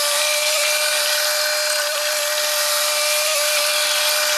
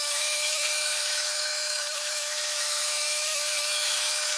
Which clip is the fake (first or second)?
second